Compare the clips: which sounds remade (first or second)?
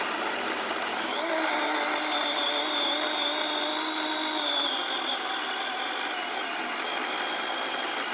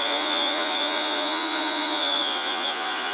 second